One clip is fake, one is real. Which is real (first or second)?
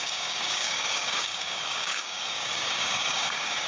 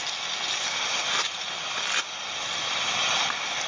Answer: second